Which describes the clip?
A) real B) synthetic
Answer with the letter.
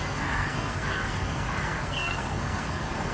B